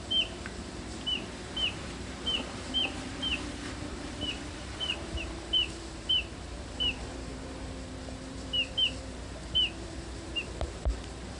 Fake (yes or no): yes